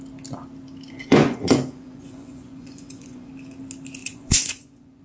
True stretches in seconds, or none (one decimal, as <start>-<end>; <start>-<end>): 0.0-1.0; 3.3-4.0